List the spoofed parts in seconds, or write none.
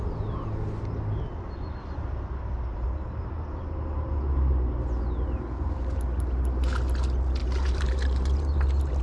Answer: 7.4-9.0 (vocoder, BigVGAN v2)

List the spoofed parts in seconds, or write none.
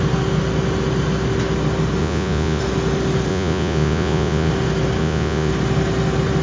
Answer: 2.0-2.6 (vocoder, Vocos); 3.3-4.5; 5.0-5.5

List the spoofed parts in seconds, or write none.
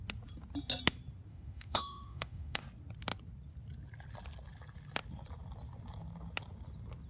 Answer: 1.3-2.6 (autoencoder, DAC-VAE)